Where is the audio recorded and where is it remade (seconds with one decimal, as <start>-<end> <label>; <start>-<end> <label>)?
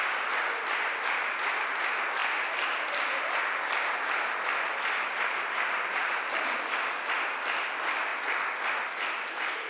0.0-2.2 remade; 2.2-5.1 recorded; 5.1-8.1 remade; 8.1-8.8 recorded; 8.8-9.7 remade